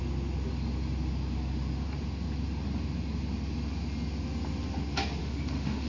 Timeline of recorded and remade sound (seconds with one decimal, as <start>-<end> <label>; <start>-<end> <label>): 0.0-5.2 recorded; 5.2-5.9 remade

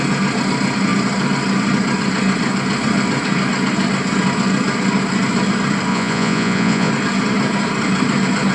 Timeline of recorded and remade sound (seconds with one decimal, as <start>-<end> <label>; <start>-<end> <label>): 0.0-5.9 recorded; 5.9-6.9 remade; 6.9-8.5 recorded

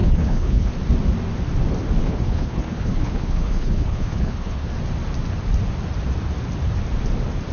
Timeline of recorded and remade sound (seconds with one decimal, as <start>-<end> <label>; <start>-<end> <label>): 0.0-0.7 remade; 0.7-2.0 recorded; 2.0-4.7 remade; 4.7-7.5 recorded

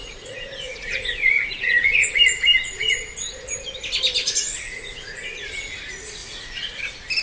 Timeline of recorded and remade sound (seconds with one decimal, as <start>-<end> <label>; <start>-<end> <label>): 0.0-2.1 remade; 2.1-4.2 recorded; 4.2-5.4 remade; 5.4-6.2 recorded; 6.2-6.8 remade; 6.8-7.2 recorded

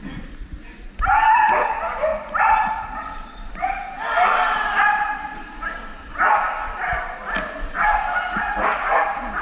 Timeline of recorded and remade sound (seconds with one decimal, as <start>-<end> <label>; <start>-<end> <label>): 0.0-9.4 recorded

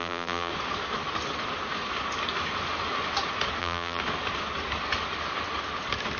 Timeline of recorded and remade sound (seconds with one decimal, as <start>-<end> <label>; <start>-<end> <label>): 0.0-0.5 remade; 0.5-3.6 recorded; 3.6-4.0 remade; 4.0-6.2 recorded

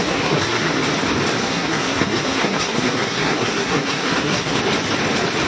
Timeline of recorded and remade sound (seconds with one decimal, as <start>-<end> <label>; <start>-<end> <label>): 0.0-0.8 remade; 0.8-1.4 recorded; 1.4-4.6 remade; 4.6-5.5 recorded

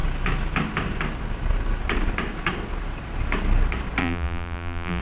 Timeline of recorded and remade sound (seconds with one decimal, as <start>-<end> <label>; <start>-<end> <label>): 0.0-4.0 recorded; 4.0-5.0 remade